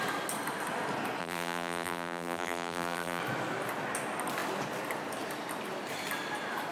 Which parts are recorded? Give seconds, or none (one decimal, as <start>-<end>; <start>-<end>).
0.0-1.2; 3.2-6.7